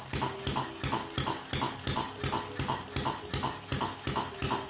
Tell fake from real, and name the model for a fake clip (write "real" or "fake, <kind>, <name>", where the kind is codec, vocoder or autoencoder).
real